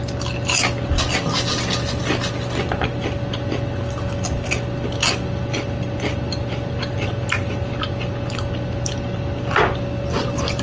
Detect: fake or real real